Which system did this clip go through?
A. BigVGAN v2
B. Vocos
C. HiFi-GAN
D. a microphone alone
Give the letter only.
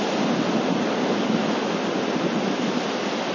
D